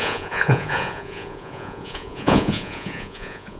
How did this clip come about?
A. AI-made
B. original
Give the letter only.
A